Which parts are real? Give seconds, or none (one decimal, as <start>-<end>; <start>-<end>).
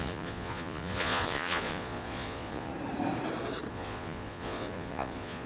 2.7-3.7